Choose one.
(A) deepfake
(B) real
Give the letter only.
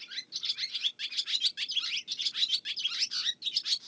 B